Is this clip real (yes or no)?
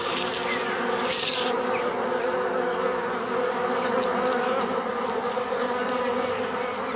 yes